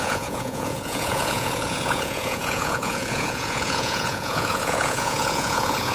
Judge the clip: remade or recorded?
remade